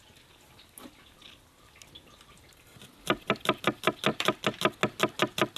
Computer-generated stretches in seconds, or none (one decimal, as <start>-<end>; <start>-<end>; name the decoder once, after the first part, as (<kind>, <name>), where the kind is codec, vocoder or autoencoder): 4.1-4.6 (vocoder, BigVGAN v2)